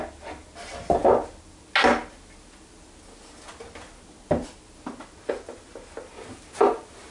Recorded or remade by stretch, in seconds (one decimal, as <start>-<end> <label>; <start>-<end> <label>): 0.0-7.1 recorded